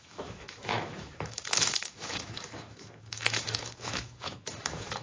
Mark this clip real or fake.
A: fake